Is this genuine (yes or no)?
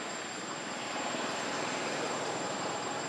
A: no